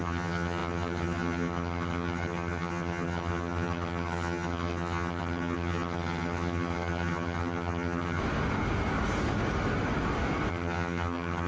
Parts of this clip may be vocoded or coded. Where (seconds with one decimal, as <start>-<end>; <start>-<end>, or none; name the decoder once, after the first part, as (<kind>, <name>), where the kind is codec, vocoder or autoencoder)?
0.0-8.2 (vocoder, HiFi-GAN); 10.5-11.5